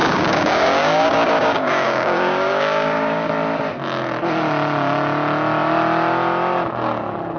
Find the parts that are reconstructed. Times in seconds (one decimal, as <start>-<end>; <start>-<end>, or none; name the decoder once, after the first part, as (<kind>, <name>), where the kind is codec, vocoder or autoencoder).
0.0-3.3 (codec, DAC)